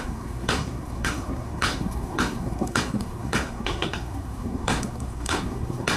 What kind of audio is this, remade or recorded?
remade